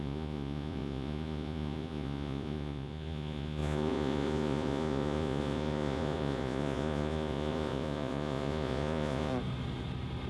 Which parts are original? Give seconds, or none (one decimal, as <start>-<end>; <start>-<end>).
9.3-10.3